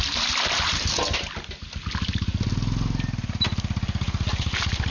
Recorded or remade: recorded